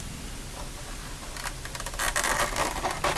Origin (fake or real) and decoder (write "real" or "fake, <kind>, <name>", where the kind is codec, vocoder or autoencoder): real